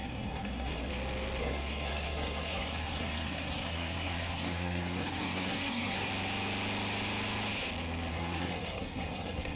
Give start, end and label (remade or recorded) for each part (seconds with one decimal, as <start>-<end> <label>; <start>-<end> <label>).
0.0-0.9 remade; 0.9-1.4 recorded; 1.4-6.1 remade; 6.1-8.1 recorded; 8.1-9.6 remade